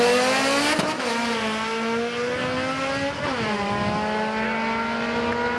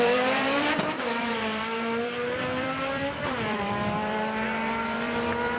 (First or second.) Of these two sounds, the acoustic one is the first